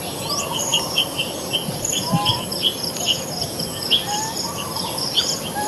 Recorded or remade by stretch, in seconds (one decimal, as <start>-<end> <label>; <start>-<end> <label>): 0.0-5.7 recorded